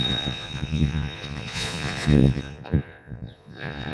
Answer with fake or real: fake